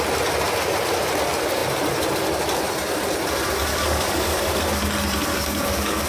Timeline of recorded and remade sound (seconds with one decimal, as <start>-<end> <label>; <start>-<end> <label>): 0.0-3.7 recorded; 3.7-4.6 remade; 4.6-5.3 recorded; 5.3-6.1 remade